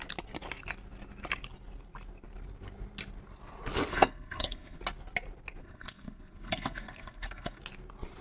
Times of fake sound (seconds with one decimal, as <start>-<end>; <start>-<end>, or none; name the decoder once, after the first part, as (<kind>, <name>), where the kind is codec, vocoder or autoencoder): 3.9-4.8 (codec, SNAC); 5.6-7.6